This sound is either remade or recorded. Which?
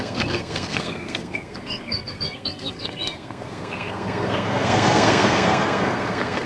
remade